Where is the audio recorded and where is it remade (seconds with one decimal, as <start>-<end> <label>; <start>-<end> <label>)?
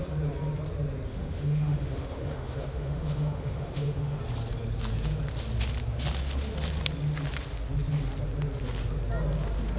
0.0-1.1 recorded; 1.1-4.2 remade; 4.2-9.8 recorded